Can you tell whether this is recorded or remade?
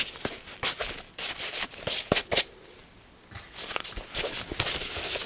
recorded